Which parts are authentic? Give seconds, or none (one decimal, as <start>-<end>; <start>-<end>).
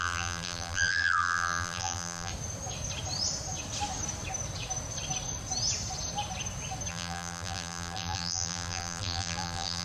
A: 2.3-6.9